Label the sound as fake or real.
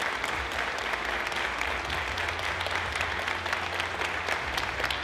real